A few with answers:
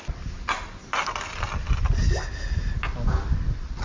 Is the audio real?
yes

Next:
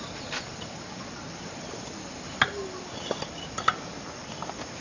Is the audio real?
yes